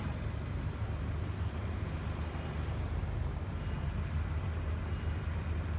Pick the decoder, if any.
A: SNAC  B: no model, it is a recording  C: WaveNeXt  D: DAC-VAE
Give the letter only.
B